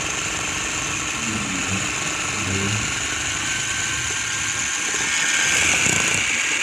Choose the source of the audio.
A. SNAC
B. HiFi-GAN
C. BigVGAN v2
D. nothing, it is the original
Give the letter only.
D